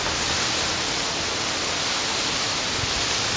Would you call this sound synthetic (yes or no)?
no